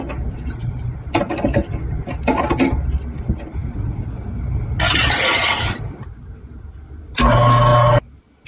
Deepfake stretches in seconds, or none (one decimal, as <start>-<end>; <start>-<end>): none